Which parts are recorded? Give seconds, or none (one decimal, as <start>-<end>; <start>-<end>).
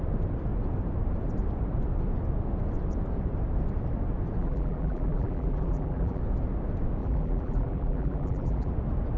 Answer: 0.0-4.4; 6.2-7.0; 8.7-9.2